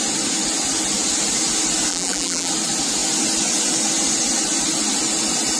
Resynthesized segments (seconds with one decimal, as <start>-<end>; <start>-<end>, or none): 1.9-2.5